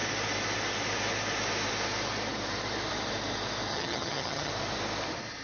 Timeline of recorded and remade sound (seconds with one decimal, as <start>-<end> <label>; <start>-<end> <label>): 0.0-3.7 recorded; 3.7-4.5 remade; 4.5-5.4 recorded